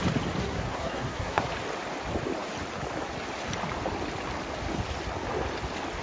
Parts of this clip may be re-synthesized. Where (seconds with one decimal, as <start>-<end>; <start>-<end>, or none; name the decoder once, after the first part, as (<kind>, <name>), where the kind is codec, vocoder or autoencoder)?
0.4-1.5 (codec, SNAC)